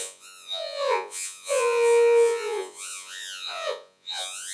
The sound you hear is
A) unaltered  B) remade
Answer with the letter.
B